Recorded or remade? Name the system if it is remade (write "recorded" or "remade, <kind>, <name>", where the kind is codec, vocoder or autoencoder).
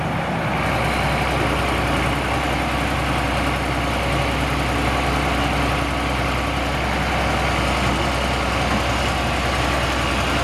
recorded